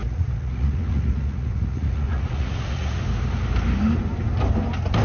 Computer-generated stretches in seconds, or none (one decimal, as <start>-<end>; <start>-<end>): 0.0-3.0